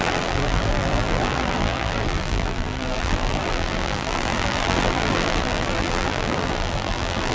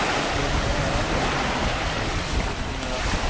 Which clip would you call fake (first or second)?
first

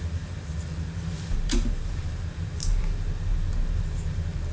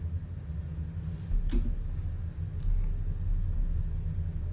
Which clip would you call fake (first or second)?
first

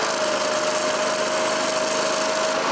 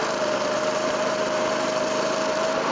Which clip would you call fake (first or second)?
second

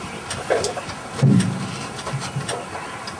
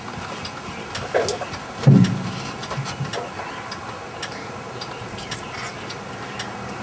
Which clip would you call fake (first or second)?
first